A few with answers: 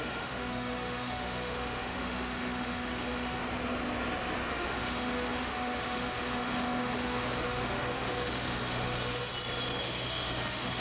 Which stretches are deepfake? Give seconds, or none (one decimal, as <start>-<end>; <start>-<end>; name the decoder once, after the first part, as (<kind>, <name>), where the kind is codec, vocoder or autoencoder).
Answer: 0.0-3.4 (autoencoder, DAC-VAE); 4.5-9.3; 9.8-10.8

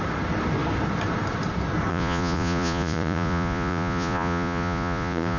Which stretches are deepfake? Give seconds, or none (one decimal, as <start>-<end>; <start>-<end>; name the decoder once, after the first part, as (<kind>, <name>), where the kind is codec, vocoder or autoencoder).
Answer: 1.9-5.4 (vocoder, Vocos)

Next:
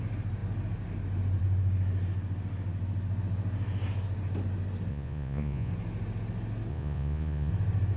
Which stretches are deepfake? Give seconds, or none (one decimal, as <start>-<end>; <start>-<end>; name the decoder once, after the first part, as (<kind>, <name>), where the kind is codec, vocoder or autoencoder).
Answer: 4.9-5.7 (vocoder, Vocos); 6.7-7.5

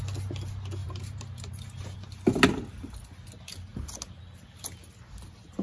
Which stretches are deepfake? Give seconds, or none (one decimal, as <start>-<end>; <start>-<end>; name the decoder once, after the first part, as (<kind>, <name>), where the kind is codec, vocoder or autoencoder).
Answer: 0.8-2.4 (vocoder, BigVGAN v2)